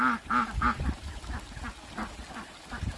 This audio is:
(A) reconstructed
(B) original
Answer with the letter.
B